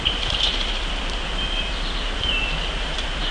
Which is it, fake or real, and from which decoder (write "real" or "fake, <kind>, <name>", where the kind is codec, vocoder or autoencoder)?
real